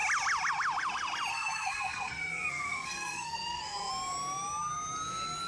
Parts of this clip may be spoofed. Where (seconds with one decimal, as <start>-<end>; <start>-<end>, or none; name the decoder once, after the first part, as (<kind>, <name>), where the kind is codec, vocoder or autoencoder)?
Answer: 1.3-3.9 (codec, SNAC)